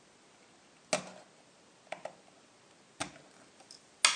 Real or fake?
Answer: real